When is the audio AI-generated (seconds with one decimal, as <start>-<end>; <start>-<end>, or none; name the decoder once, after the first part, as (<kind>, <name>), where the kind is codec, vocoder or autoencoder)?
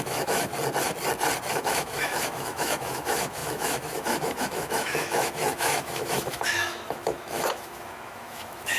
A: 0.0-0.5 (autoencoder, DAC-VAE); 1.5-8.8